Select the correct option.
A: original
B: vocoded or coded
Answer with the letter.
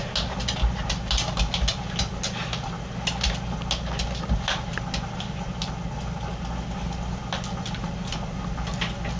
A